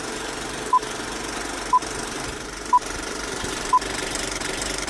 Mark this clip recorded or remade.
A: remade